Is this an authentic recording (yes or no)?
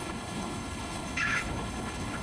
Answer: no